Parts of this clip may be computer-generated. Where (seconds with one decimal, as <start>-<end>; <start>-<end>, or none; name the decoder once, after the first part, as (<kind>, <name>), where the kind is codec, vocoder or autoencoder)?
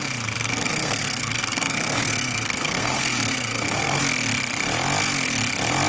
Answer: 0.5-4.0 (codec, SNAC)